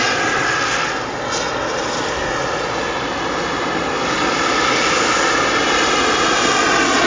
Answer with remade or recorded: recorded